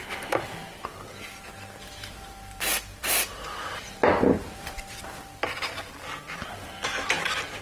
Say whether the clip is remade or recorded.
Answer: remade